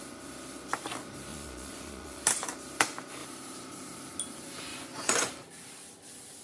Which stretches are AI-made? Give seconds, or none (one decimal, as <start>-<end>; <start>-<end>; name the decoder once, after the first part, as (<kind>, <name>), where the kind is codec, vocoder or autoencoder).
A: 1.3-2.2 (vocoder, Vocos); 4.7-5.3